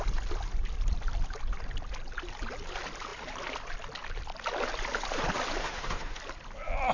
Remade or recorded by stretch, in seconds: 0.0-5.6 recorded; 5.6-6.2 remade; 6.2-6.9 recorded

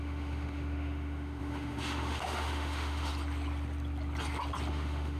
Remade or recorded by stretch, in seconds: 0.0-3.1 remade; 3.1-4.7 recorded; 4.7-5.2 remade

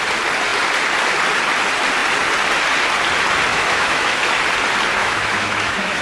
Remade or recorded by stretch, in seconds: 0.0-3.5 recorded; 3.5-4.3 remade; 4.3-5.0 recorded; 5.0-6.0 remade

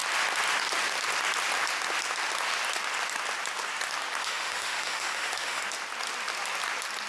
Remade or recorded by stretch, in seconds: 0.0-4.2 recorded; 4.2-5.6 remade; 5.6-7.1 recorded